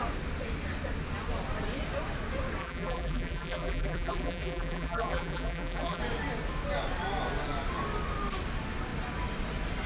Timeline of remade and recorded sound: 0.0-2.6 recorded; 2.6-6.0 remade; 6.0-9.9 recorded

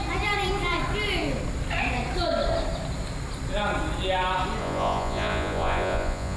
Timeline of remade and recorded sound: 0.0-4.6 recorded; 4.6-6.4 remade

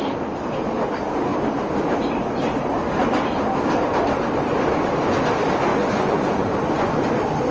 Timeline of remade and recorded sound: 0.0-5.7 recorded; 5.7-7.0 remade; 7.0-7.5 recorded